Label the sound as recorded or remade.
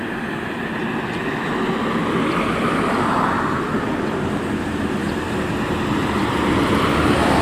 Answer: recorded